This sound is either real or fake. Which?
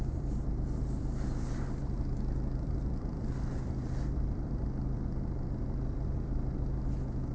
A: fake